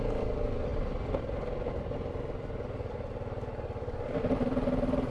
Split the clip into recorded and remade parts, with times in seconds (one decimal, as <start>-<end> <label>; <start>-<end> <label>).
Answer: 0.0-5.1 recorded